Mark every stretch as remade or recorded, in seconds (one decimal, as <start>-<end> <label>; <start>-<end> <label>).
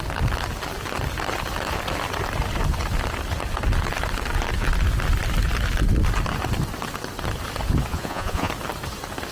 0.0-7.9 recorded; 7.9-8.5 remade; 8.5-9.3 recorded